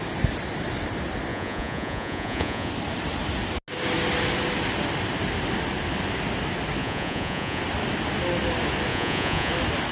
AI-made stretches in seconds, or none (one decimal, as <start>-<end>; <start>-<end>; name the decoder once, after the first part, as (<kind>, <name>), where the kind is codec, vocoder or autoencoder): 1.3-2.7 (vocoder, Vocos); 6.8-7.6; 8.9-9.5